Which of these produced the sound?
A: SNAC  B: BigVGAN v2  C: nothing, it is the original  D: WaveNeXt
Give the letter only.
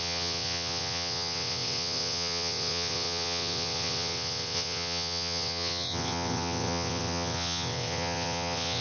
D